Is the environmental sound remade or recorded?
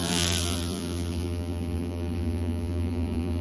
remade